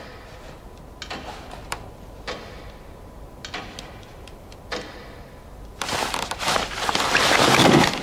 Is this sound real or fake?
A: fake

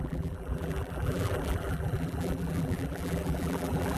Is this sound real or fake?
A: fake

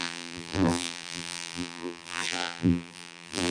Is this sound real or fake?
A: fake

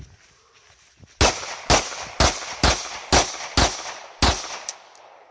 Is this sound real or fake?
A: real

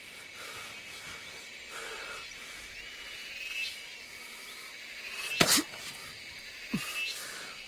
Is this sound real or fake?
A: real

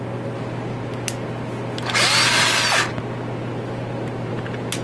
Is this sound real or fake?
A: real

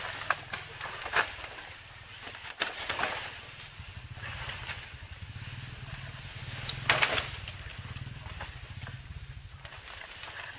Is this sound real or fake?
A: real